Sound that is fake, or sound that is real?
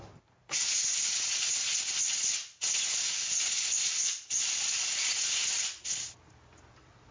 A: fake